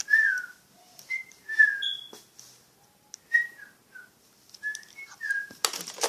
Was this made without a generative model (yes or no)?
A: yes